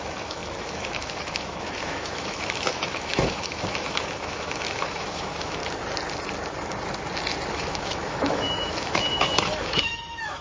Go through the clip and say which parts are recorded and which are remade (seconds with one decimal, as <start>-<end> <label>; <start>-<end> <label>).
0.0-5.6 remade; 5.6-7.5 recorded; 7.5-10.4 remade